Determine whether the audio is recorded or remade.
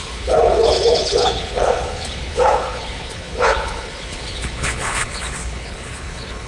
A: remade